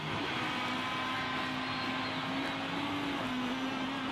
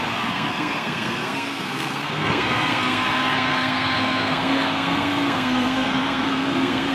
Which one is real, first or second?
first